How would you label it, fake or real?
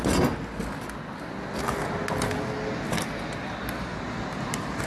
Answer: real